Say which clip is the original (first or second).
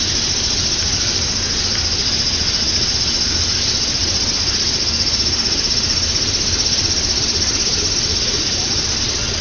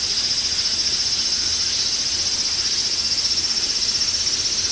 second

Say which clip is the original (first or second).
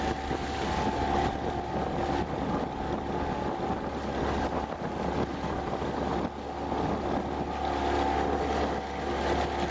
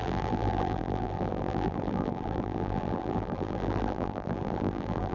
first